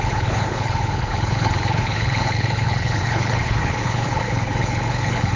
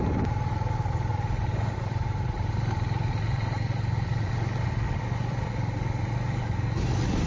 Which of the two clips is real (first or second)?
second